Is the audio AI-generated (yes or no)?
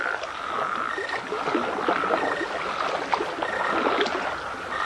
no